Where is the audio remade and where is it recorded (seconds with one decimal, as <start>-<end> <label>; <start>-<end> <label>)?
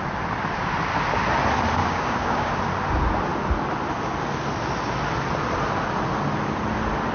0.0-1.8 recorded; 1.8-2.5 remade; 2.5-7.1 recorded